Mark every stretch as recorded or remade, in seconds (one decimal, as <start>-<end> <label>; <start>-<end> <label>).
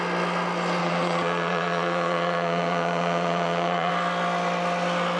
0.0-0.8 recorded; 0.8-3.9 remade; 3.9-5.2 recorded